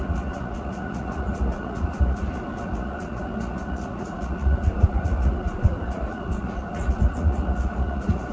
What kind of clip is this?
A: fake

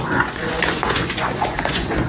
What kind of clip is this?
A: fake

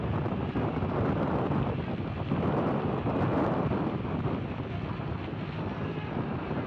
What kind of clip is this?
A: real